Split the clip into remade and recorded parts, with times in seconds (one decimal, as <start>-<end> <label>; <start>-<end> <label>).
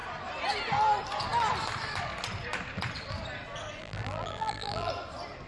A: 0.0-3.8 recorded; 3.8-4.9 remade; 4.9-5.5 recorded